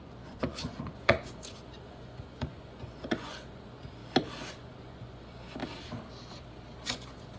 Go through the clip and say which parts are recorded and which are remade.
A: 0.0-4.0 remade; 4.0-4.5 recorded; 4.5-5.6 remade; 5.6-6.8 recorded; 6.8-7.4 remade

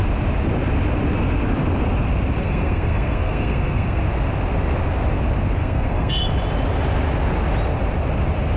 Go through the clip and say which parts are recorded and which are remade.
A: 0.0-2.4 recorded; 2.4-4.0 remade; 4.0-5.6 recorded; 5.6-6.1 remade; 6.1-8.6 recorded

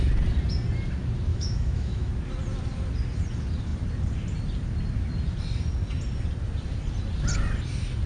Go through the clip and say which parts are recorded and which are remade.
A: 0.0-1.3 recorded; 1.3-2.1 remade; 2.1-8.1 recorded

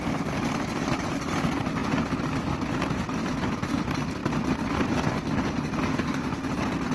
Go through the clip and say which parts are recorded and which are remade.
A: 0.0-5.9 recorded; 5.9-6.5 remade; 6.5-6.9 recorded

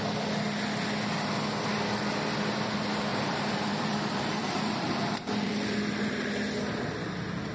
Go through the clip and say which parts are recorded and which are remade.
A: 0.0-3.1 recorded; 3.1-5.5 remade; 5.5-7.5 recorded